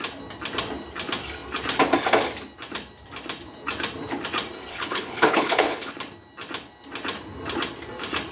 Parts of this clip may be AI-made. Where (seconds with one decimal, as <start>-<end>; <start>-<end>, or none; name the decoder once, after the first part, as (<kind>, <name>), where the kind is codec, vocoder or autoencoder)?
4.7-5.9 (codec, HILCodec)